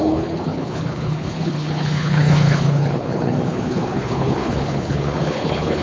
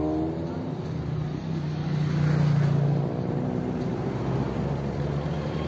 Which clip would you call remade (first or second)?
first